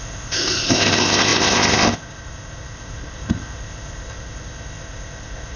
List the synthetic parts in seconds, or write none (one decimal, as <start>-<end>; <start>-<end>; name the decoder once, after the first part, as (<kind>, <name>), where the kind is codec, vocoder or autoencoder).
0.0-5.6 (codec, ZipCodec)